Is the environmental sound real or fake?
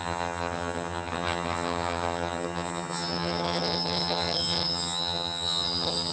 fake